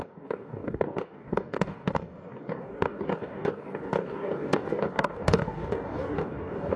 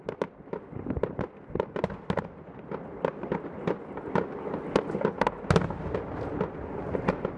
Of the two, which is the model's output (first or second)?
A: first